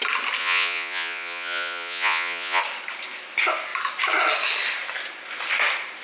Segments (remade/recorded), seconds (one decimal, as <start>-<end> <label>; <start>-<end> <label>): 0.0-0.4 recorded; 0.4-2.6 remade; 2.6-6.0 recorded